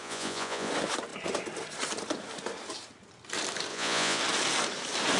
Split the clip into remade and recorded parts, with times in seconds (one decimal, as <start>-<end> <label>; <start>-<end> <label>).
0.0-0.7 remade; 0.7-3.7 recorded; 3.7-4.2 remade; 4.2-5.2 recorded